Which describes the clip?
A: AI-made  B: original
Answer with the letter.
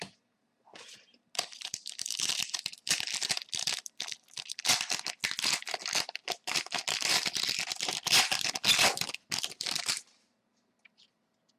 B